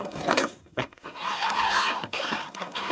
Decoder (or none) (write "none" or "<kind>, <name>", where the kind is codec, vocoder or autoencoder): codec, SNAC